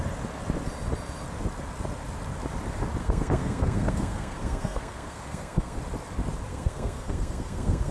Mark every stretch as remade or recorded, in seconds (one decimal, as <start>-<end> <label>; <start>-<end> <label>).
0.0-3.0 recorded; 3.0-5.8 remade; 5.8-6.5 recorded; 6.5-7.9 remade